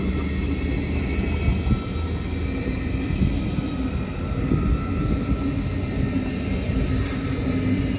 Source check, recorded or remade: recorded